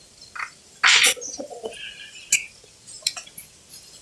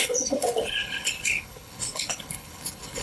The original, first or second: first